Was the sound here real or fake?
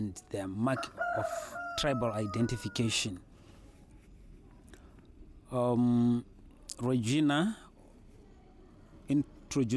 real